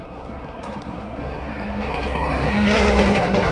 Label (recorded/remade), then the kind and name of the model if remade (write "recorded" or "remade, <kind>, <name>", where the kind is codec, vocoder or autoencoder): remade, codec, SNAC